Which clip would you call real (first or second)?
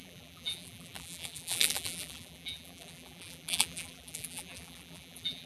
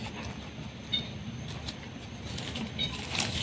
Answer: second